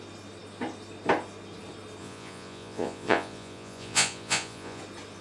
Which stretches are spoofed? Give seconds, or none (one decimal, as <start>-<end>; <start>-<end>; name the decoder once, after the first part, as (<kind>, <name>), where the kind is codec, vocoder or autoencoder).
2.0-4.8 (vocoder, Vocos)